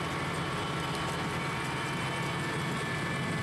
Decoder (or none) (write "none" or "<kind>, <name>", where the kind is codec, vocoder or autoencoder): none